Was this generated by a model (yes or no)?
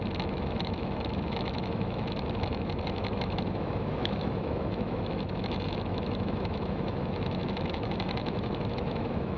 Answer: yes